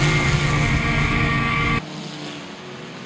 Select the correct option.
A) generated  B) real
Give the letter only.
B